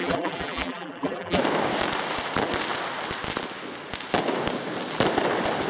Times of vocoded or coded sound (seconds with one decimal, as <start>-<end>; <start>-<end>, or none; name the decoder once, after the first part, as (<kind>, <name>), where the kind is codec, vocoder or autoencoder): 0.0-1.4 (vocoder, BigVGAN v2)